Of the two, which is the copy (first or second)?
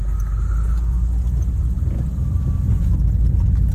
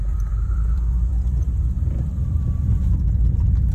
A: second